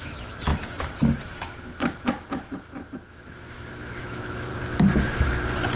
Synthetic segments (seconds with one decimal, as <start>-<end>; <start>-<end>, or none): 0.0-4.5